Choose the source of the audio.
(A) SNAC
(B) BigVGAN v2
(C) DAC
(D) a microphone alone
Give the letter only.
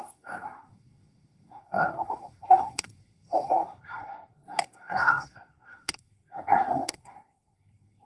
A